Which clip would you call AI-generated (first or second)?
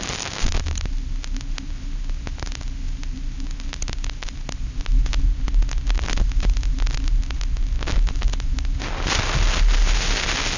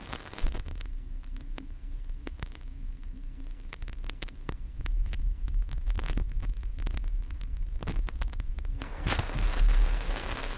second